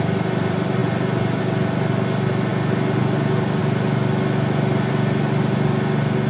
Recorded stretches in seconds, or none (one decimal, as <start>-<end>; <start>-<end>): 0.0-6.3